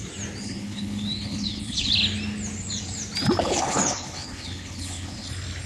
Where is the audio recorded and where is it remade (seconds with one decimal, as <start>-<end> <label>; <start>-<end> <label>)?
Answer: 0.0-0.4 recorded; 0.4-1.9 remade; 1.9-3.4 recorded; 3.4-5.3 remade; 5.3-5.7 recorded